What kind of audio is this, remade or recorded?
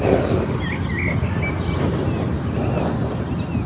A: recorded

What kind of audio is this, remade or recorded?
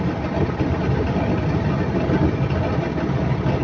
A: recorded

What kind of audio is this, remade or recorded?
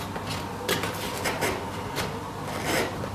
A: recorded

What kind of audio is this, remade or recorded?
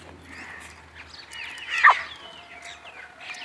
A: recorded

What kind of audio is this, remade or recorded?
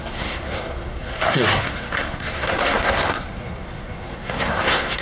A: remade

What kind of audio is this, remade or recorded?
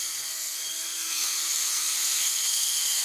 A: remade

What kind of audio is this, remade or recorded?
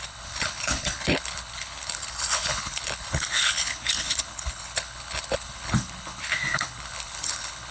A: remade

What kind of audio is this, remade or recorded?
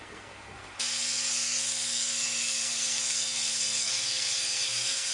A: remade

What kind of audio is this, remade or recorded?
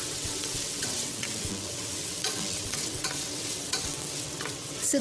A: remade